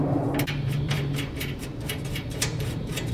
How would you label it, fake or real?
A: fake